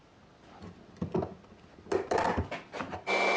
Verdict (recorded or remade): recorded